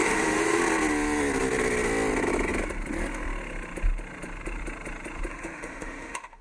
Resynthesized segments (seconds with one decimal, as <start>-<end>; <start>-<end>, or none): 0.0-0.6; 5.3-6.4